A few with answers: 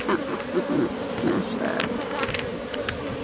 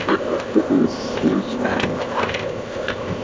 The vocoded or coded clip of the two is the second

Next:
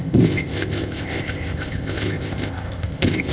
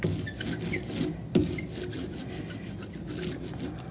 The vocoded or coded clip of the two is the first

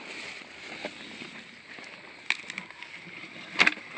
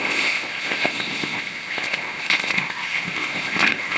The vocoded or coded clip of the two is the second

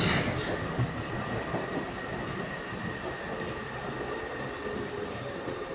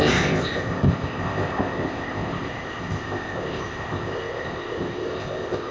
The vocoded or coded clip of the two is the second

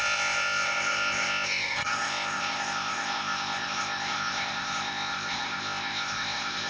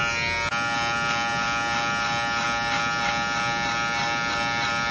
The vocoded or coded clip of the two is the first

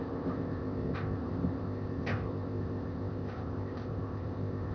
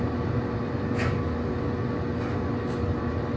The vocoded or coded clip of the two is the first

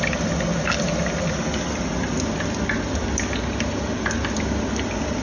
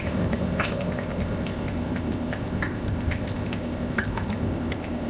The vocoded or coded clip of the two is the second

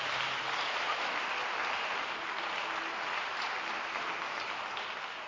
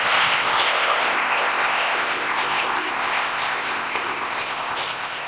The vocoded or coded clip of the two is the second